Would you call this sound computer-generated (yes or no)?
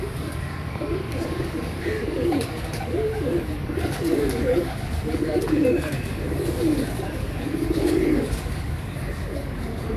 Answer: yes